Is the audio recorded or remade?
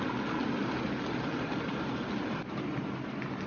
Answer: recorded